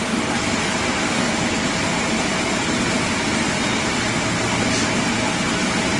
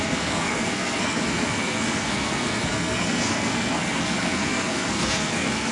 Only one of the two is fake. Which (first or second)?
second